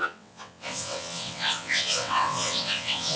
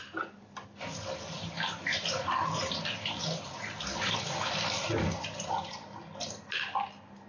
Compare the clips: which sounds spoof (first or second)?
first